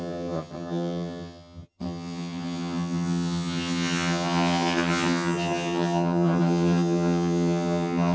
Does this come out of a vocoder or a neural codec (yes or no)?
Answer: yes